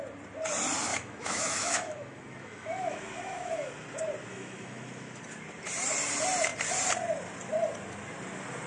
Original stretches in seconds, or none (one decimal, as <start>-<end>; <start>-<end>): 0.0-0.9; 3.7-4.3; 5.2-8.7